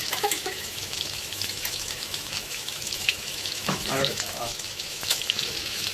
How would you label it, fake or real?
fake